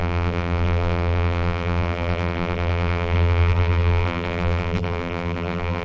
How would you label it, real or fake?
fake